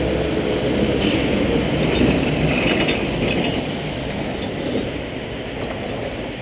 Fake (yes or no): no